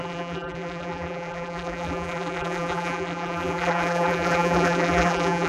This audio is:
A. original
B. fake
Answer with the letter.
B